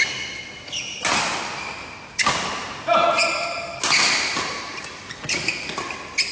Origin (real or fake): real